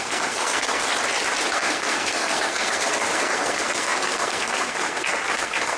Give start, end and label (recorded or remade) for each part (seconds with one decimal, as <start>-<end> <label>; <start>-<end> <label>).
0.0-0.9 remade; 0.9-1.5 recorded; 1.5-5.8 remade